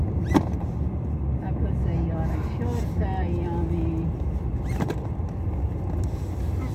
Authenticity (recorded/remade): recorded